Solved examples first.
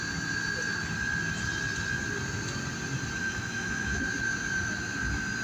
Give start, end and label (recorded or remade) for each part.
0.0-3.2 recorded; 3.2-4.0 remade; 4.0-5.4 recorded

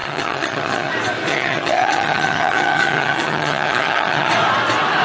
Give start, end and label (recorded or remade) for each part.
0.0-0.9 remade; 0.9-1.3 recorded; 1.3-4.3 remade; 4.3-5.0 recorded

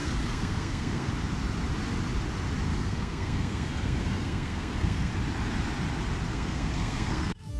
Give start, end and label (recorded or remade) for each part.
0.0-1.1 remade; 1.1-2.7 recorded; 2.7-5.1 remade; 5.1-6.3 recorded; 6.3-7.6 remade